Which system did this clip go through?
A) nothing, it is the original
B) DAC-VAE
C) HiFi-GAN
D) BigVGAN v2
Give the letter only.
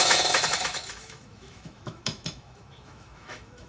B